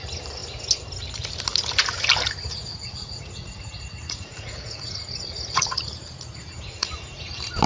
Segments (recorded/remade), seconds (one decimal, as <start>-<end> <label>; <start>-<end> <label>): 0.0-2.7 recorded; 2.7-7.3 remade; 7.3-7.7 recorded